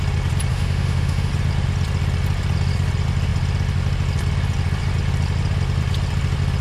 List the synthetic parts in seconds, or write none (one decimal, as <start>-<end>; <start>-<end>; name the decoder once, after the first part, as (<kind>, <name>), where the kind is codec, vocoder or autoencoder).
0.5-1.3 (autoencoder, DAC-VAE)